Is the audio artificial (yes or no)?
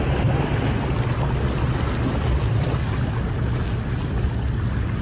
no